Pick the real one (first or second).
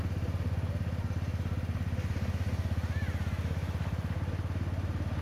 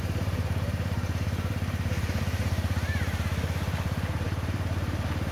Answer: first